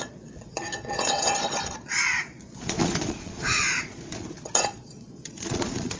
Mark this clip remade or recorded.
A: remade